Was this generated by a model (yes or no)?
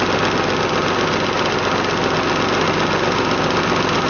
no